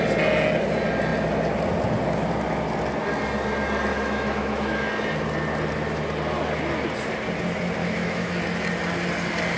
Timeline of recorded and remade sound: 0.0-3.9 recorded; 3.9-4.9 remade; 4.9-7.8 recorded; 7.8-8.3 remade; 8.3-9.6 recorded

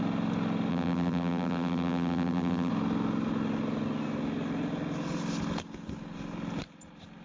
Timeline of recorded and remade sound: 0.0-0.7 recorded; 0.7-2.7 remade; 2.7-7.2 recorded